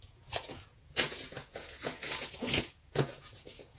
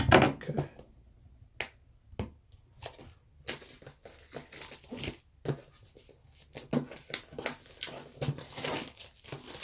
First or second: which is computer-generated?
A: first